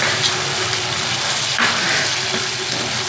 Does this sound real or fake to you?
real